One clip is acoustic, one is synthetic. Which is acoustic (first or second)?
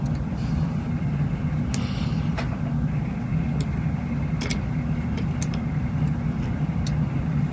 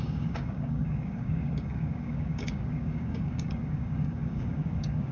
first